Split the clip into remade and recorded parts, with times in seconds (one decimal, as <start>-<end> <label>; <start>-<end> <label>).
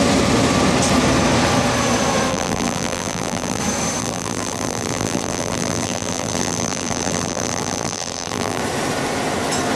0.0-2.3 recorded; 2.3-3.6 remade; 3.6-4.0 recorded; 4.0-8.6 remade; 8.6-9.8 recorded